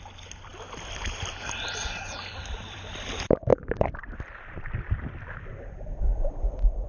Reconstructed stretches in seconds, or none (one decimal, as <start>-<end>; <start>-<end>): 0.0-0.5; 1.4-6.9